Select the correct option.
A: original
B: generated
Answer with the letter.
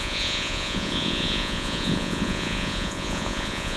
B